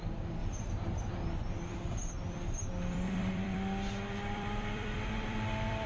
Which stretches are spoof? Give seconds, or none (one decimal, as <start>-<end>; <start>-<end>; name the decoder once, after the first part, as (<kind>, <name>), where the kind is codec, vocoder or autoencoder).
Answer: 0.0-0.4 (vocoder, BigVGAN v2); 1.7-5.9